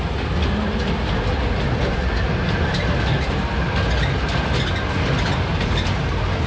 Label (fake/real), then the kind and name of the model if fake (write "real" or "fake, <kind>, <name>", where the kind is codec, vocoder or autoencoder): real